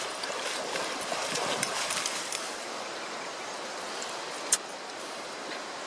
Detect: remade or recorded remade